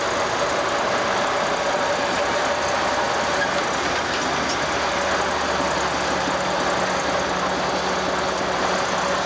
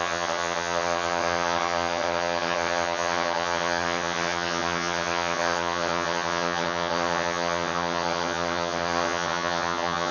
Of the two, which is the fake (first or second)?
second